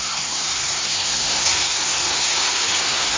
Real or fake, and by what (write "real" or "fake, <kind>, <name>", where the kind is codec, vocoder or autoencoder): fake, codec, SNAC